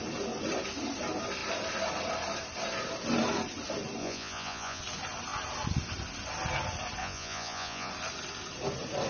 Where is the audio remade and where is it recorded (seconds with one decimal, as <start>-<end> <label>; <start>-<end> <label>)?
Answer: 0.0-4.0 recorded; 4.0-4.8 remade; 4.8-7.0 recorded; 7.0-7.9 remade; 7.9-9.1 recorded